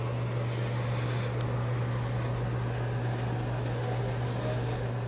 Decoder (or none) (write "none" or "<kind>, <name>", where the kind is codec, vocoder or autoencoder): none